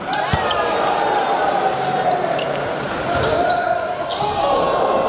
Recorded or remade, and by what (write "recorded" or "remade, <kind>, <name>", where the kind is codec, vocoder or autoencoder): remade, vocoder, BigVGAN v2